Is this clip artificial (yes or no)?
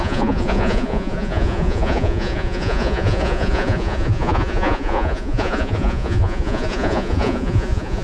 yes